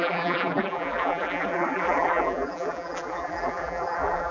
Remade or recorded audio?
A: remade